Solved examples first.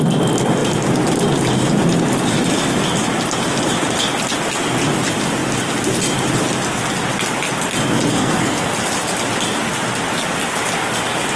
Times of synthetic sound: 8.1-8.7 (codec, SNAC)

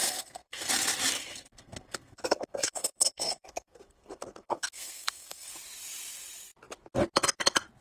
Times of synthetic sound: 0.0-0.7 (codec, SNAC); 1.2-5.5

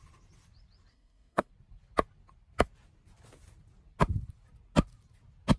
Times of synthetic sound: 0.9-1.5 (codec, SNAC)

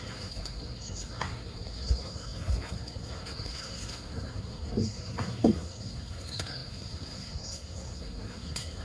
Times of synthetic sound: 0.0-8.8 (codec, SNAC)

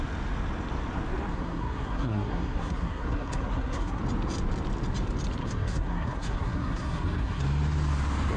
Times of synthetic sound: 1.3-4.0 (codec, SNAC); 5.4-7.4